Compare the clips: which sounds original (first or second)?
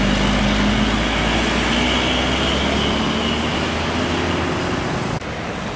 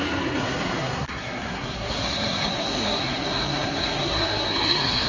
first